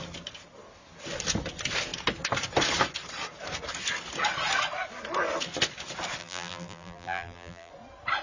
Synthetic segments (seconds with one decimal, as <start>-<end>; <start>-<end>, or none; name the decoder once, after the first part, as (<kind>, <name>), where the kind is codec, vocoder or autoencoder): 6.2-7.7 (vocoder, BigVGAN v2)